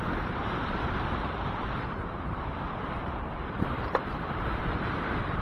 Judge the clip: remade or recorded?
remade